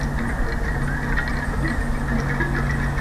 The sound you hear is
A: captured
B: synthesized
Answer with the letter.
A